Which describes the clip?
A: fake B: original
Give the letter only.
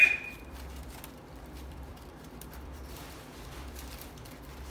A